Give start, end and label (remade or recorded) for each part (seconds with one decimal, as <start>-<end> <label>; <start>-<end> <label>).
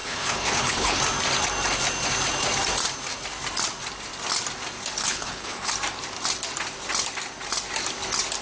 0.0-1.0 remade; 1.0-5.0 recorded; 5.0-5.7 remade; 5.7-8.4 recorded